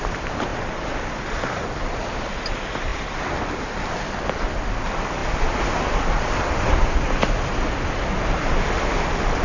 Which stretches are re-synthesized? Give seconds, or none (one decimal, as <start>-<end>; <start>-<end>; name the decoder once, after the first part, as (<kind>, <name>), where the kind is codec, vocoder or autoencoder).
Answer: none

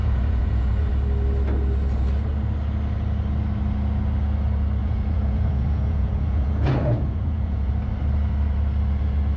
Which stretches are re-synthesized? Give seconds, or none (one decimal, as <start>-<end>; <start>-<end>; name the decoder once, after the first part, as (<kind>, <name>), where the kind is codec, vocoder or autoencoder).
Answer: 0.0-0.9 (vocoder, Vocos); 4.8-7.7

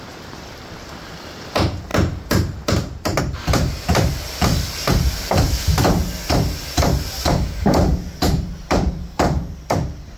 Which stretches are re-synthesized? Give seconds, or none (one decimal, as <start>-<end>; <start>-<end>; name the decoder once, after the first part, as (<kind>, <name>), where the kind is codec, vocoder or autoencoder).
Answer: 0.0-1.9 (vocoder, BigVGAN v2); 3.2-7.8; 8.6-10.2

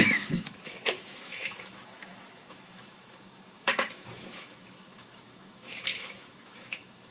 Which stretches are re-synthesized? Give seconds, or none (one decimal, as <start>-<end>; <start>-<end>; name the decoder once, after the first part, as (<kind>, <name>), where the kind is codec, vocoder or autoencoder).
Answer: 0.0-7.1 (autoencoder, DAC-VAE)

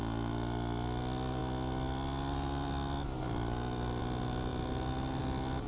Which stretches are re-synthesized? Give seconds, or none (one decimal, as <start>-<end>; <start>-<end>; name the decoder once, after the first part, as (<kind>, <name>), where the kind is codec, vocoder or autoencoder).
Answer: none

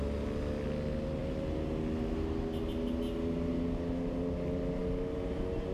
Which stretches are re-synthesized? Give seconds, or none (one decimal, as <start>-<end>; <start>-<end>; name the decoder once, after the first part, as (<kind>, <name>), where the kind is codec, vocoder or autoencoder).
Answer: none